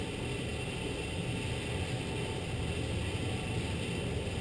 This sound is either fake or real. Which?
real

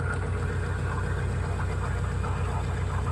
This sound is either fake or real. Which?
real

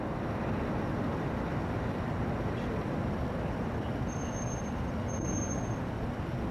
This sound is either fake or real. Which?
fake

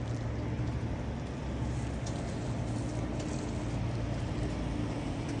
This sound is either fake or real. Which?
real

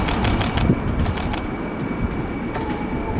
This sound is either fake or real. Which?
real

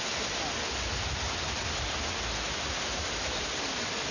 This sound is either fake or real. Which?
real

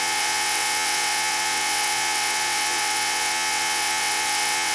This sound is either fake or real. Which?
fake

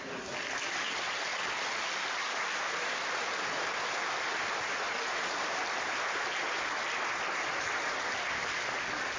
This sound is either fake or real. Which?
real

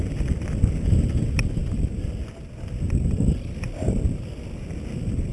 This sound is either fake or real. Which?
real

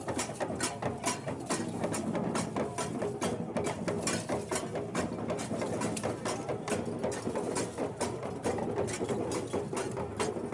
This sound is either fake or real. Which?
real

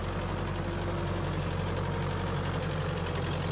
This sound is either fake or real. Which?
real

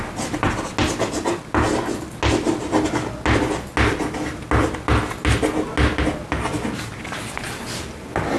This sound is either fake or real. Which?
real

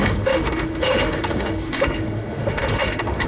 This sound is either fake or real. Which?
fake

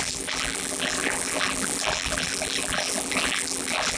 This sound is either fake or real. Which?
fake